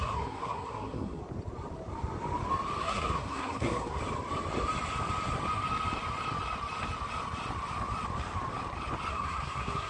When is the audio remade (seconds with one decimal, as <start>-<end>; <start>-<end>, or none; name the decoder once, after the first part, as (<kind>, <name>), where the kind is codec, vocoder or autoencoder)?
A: 0.0-1.2 (codec, SNAC); 2.8-4.0; 9.1-9.9